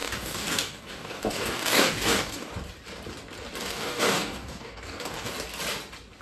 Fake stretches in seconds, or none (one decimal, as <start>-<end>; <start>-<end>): 0.0-2.5; 3.6-5.3